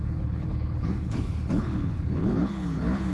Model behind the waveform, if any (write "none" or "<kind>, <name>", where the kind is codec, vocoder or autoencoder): codec, HILCodec